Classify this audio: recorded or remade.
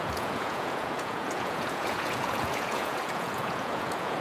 remade